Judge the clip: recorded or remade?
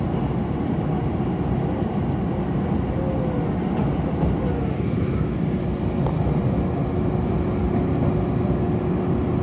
recorded